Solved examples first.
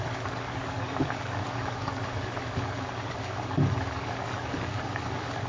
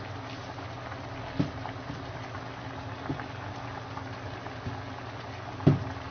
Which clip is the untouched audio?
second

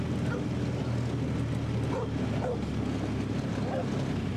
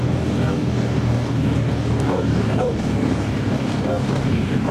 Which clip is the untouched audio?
first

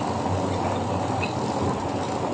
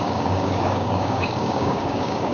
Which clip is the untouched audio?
first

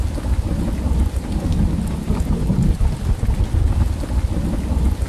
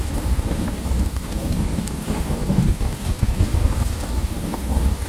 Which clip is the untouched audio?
first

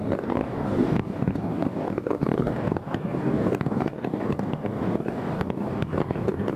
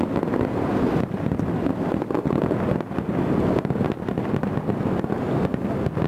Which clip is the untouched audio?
second